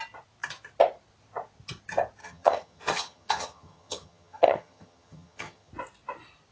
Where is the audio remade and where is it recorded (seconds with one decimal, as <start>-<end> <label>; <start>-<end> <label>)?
0.0-2.2 recorded; 2.2-5.7 remade; 5.7-6.5 recorded

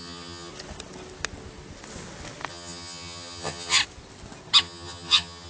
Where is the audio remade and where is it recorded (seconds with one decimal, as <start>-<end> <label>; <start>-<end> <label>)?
0.0-0.5 remade; 0.5-2.5 recorded; 2.5-3.8 remade; 3.8-4.6 recorded; 4.6-5.5 remade

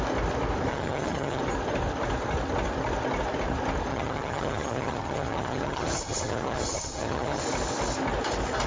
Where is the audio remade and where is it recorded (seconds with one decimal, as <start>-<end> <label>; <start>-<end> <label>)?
0.0-0.7 recorded; 0.7-1.4 remade; 1.4-3.9 recorded; 3.9-7.4 remade; 7.4-8.7 recorded

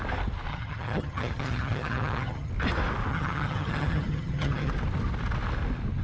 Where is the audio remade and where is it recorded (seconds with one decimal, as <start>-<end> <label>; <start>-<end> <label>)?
0.0-0.5 recorded; 0.5-2.5 remade; 2.5-3.1 recorded; 3.1-4.7 remade; 4.7-6.0 recorded

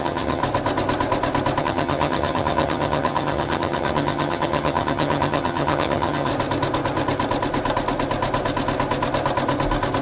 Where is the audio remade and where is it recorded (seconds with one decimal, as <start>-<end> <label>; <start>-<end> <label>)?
0.0-0.4 remade; 0.4-1.6 recorded; 1.6-6.3 remade; 6.3-10.0 recorded

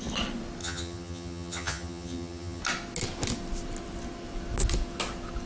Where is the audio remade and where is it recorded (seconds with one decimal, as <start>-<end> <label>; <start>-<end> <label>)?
0.0-0.6 recorded; 0.6-2.6 remade; 2.6-5.5 recorded

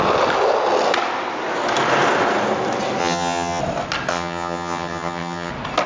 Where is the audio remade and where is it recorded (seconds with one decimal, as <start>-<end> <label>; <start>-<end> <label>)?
0.0-3.0 recorded; 3.0-3.6 remade; 3.6-4.1 recorded; 4.1-5.5 remade; 5.5-5.9 recorded

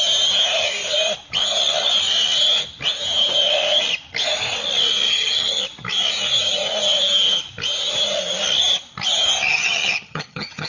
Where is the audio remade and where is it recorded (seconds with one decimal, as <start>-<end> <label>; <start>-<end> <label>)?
0.0-5.1 recorded; 5.1-5.6 remade; 5.6-9.5 recorded; 9.5-10.7 remade